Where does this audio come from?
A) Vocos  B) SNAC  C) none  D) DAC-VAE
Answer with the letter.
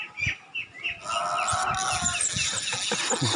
C